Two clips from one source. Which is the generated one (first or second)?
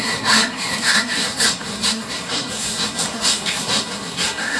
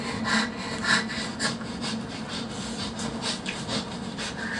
first